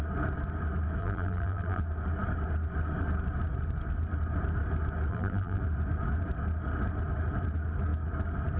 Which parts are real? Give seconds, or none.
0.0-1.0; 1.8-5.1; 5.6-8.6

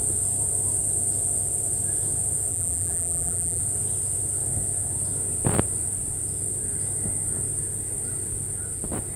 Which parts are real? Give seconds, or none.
0.0-2.5; 3.6-9.2

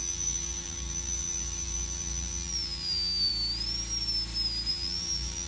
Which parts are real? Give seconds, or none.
3.3-4.7